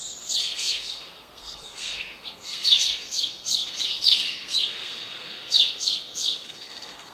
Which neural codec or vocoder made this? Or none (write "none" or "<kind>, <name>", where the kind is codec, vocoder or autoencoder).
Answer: codec, SNAC